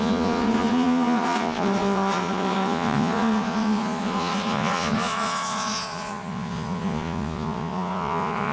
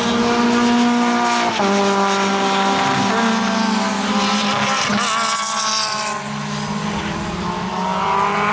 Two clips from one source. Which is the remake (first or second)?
first